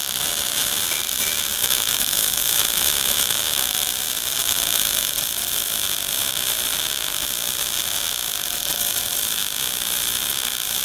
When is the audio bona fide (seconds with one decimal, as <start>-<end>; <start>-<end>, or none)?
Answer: 0.0-1.6; 3.9-4.4; 5.1-10.8